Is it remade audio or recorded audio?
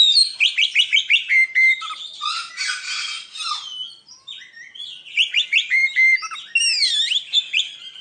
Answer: recorded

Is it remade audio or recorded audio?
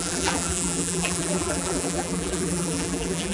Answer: remade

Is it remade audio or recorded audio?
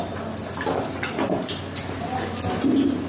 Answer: recorded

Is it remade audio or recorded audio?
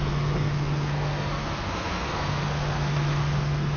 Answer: remade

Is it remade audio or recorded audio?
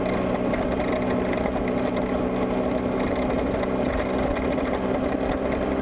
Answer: recorded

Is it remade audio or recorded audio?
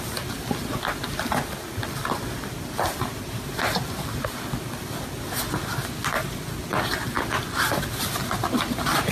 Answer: recorded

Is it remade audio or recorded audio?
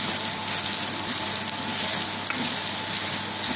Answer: recorded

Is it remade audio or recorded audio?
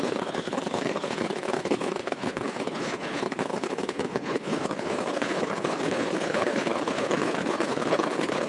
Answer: remade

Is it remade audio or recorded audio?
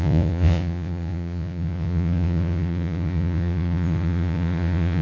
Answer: remade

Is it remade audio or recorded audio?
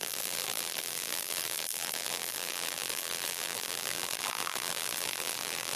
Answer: remade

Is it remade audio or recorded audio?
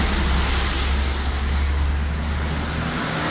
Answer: recorded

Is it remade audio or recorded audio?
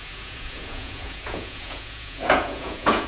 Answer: remade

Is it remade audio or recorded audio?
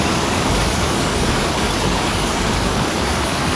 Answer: remade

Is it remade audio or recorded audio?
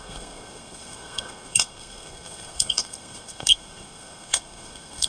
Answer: remade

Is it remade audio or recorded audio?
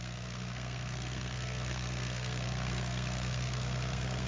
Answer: remade